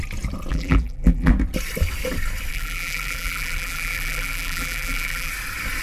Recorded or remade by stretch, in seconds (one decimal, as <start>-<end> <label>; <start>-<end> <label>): 0.0-0.5 recorded; 0.5-1.3 remade; 1.3-2.5 recorded; 2.5-5.3 remade; 5.3-5.8 recorded